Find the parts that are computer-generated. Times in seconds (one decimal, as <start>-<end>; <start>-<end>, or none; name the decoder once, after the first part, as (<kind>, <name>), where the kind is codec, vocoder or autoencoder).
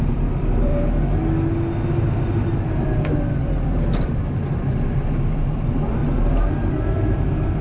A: 0.0-0.7 (vocoder, BigVGAN v2); 3.2-6.0; 6.7-7.6